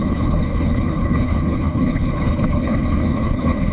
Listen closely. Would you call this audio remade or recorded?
remade